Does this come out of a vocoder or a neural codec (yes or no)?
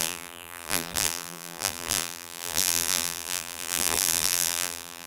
yes